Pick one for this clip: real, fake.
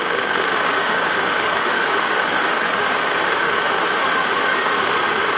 fake